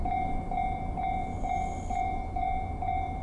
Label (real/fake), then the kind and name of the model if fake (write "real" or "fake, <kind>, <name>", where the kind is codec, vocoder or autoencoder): fake, vocoder, BigVGAN v2